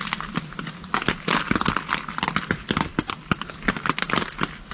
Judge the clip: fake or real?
real